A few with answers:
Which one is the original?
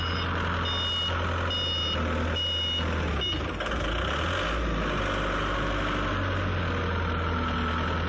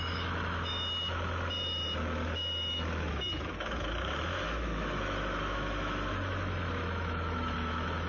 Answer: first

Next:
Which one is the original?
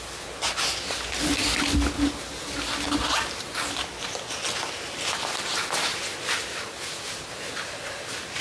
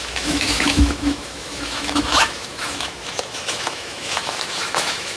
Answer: first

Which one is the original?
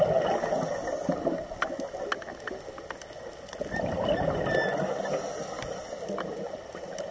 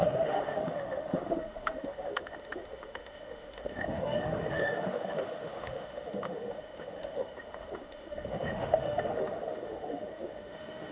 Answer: first